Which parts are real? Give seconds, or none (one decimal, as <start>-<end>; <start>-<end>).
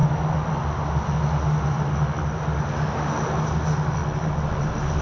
0.0-5.0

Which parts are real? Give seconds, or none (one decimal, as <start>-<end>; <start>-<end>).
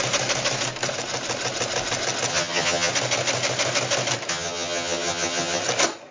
0.0-2.3; 2.9-4.3; 5.6-6.1